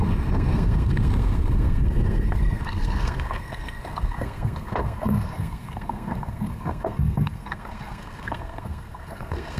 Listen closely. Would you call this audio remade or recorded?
remade